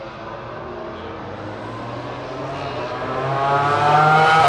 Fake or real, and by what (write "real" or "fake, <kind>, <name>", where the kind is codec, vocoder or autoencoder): real